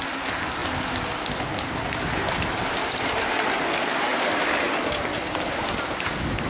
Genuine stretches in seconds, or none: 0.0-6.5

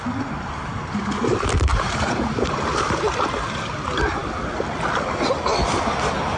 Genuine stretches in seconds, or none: 0.0-1.7; 2.6-6.4

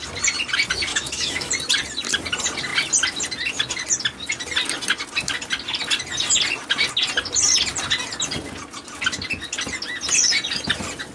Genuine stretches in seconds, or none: 0.0-0.9; 1.5-11.1

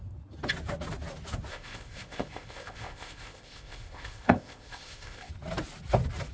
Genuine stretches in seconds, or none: 0.0-1.5; 5.3-6.3

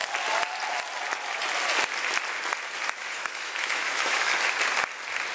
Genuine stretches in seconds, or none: 0.0-3.0; 4.3-5.3

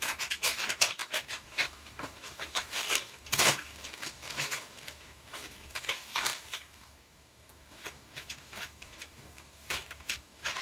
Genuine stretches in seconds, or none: none

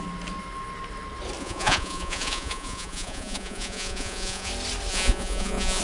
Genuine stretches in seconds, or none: 0.0-1.4; 4.5-4.9

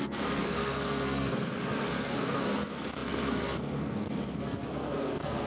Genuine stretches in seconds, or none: none